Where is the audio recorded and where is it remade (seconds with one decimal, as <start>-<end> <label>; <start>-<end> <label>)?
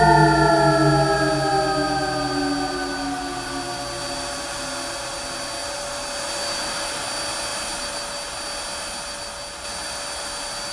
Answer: 0.0-10.7 recorded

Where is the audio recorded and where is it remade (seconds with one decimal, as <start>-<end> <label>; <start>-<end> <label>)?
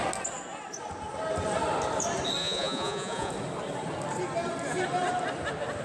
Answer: 0.0-2.4 recorded; 2.4-3.3 remade; 3.3-5.8 recorded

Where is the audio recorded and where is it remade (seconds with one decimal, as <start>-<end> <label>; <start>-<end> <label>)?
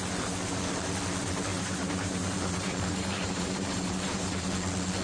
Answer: 0.0-1.5 recorded; 1.5-4.5 remade; 4.5-5.0 recorded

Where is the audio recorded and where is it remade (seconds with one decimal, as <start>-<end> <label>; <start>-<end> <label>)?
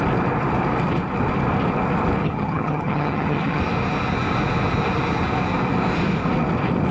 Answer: 0.0-2.2 recorded; 2.2-3.6 remade; 3.6-6.9 recorded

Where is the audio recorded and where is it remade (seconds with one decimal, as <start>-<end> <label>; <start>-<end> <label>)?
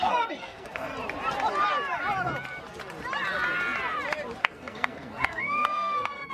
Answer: 0.0-0.9 remade; 0.9-4.4 recorded; 4.4-6.3 remade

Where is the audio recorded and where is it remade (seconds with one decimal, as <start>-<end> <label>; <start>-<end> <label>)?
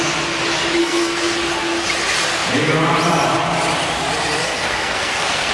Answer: 0.0-0.8 recorded; 0.8-1.3 remade; 1.3-4.4 recorded; 4.4-5.5 remade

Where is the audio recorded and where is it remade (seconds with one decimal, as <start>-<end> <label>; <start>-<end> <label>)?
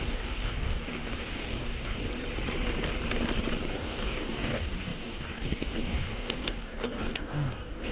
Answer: 0.0-2.1 remade; 2.1-3.8 recorded; 3.8-7.9 remade